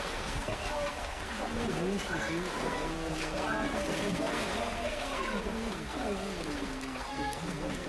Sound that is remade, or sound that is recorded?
remade